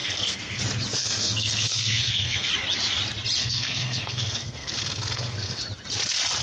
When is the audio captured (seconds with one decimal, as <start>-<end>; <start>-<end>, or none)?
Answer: 0.6-1.0; 2.5-3.4; 5.6-6.4